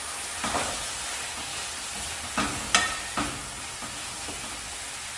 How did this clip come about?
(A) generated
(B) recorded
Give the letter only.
B